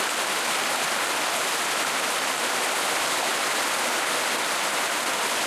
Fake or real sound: real